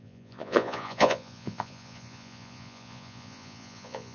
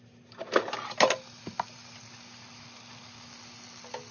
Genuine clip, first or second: second